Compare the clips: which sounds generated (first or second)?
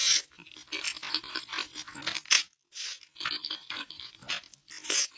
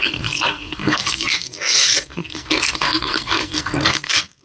second